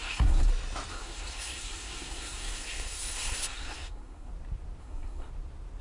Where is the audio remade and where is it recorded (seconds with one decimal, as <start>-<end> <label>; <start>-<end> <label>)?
0.0-0.5 remade; 0.5-0.9 recorded; 0.9-4.3 remade; 4.3-4.8 recorded; 4.8-5.3 remade; 5.3-5.8 recorded